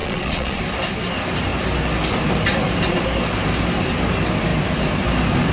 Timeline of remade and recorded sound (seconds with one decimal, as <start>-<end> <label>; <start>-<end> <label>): 0.0-0.6 remade; 0.6-5.5 recorded